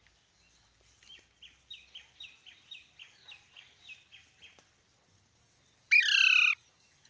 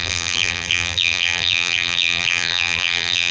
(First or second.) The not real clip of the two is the second